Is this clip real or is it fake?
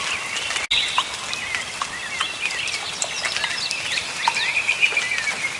real